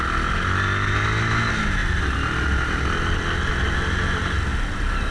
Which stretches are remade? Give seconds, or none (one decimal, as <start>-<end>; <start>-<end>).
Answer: none